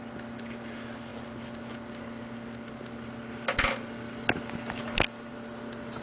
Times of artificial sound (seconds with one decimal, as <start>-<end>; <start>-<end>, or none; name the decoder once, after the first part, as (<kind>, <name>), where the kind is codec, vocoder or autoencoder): none